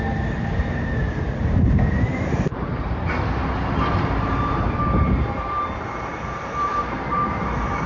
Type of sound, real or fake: fake